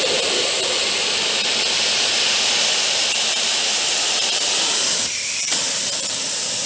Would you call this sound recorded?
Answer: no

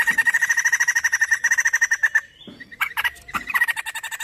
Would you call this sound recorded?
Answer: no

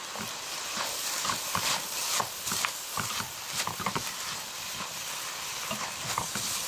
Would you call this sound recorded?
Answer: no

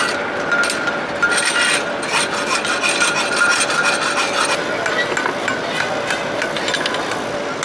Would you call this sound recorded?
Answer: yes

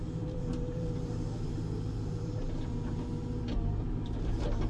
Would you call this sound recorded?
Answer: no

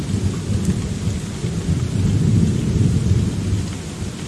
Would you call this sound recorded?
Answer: yes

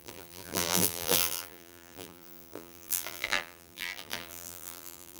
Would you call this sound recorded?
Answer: no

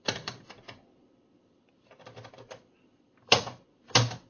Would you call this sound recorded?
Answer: no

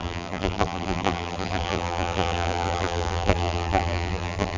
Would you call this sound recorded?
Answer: no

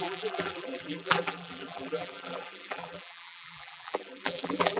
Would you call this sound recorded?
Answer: no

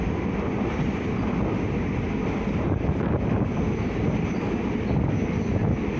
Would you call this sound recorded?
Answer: yes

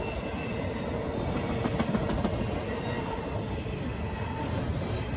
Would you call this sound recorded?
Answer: yes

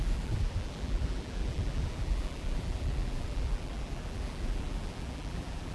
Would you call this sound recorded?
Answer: no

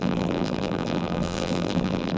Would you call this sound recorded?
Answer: no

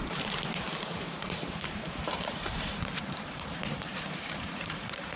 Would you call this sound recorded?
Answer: no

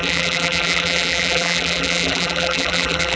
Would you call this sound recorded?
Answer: no